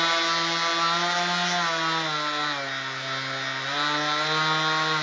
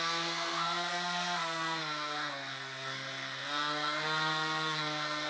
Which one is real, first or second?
first